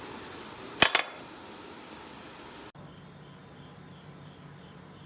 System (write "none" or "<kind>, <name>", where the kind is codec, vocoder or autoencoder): none